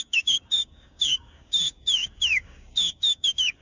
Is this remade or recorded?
remade